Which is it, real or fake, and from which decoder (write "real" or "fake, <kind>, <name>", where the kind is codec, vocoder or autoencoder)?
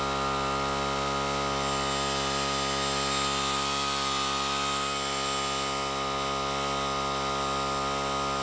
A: real